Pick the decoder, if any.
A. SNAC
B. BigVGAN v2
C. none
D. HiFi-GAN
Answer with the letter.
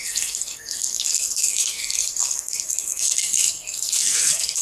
A